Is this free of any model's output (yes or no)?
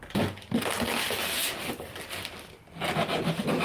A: yes